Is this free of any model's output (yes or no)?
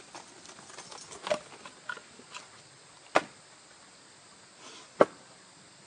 yes